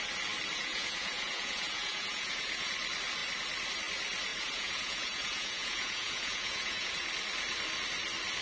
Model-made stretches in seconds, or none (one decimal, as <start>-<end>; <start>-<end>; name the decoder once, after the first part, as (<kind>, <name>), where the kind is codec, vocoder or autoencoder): 0.5-2.7 (vocoder, Vocos); 4.3-6.9